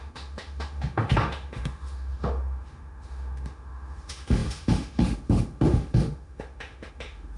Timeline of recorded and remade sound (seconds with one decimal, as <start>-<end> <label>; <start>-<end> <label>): 0.0-7.4 remade